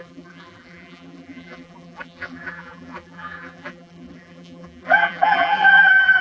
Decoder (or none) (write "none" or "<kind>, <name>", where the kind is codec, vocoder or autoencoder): vocoder, BigVGAN v2